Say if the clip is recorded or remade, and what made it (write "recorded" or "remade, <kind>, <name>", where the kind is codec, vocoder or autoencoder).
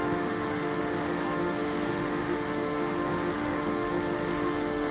remade, autoencoder, DAC-VAE